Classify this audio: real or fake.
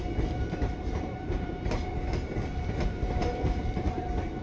fake